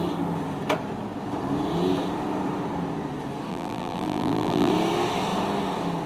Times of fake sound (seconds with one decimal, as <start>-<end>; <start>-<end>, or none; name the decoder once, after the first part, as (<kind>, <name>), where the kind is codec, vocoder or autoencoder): 3.5-4.7 (vocoder, BigVGAN v2)